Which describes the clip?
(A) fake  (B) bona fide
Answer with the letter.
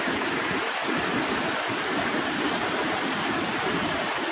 B